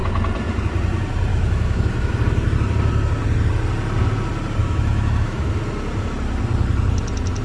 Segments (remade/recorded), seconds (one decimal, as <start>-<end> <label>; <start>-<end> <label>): 0.0-1.3 recorded; 1.3-2.2 remade; 2.2-4.6 recorded; 4.6-5.6 remade; 5.6-7.4 recorded